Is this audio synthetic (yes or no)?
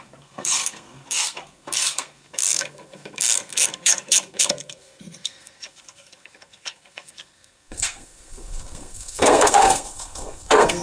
yes